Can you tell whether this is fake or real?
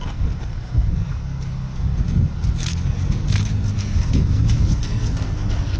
fake